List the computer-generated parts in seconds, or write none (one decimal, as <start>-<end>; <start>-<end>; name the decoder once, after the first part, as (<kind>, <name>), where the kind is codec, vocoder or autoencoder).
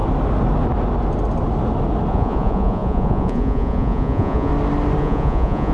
2.1-4.5 (vocoder, Vocos); 5.0-5.7